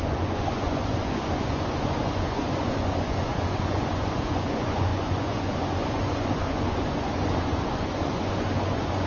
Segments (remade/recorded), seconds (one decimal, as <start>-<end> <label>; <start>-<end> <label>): 0.0-9.1 remade